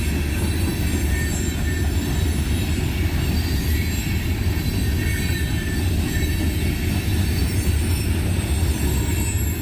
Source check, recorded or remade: recorded